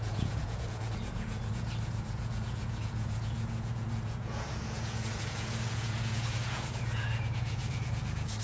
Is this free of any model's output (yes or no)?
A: no